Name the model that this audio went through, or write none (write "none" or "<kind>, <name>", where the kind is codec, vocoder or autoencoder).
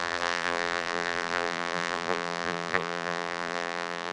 vocoder, BigVGAN v2